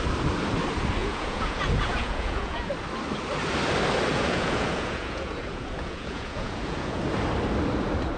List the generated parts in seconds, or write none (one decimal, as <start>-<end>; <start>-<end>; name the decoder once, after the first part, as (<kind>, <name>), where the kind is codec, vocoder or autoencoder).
1.0-2.7 (vocoder, Vocos); 4.1-7.0